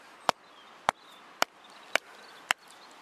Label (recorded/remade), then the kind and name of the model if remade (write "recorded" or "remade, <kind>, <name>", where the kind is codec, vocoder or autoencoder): recorded